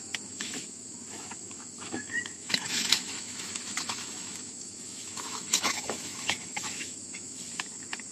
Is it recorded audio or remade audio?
remade